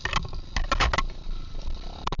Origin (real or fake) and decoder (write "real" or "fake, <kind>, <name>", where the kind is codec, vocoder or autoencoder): real